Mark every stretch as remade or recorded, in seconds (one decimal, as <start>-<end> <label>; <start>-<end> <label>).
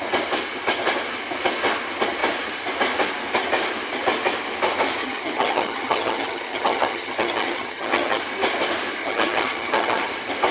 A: 0.0-5.0 recorded; 5.0-8.2 remade; 8.2-9.0 recorded; 9.0-10.1 remade; 10.1-10.5 recorded